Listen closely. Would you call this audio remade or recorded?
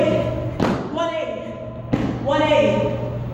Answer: recorded